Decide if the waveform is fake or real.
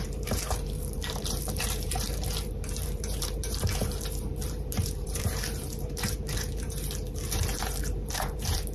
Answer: fake